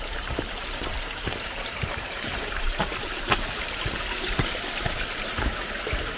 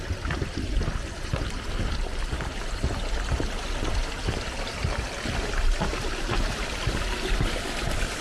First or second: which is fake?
first